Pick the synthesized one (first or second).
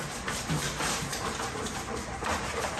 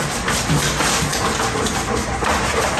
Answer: first